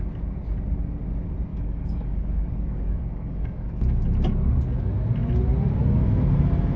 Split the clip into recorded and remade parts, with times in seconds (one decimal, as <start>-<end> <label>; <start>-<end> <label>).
0.0-1.5 recorded; 1.5-3.7 remade; 3.7-6.8 recorded